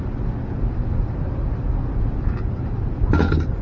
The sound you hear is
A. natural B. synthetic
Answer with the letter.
A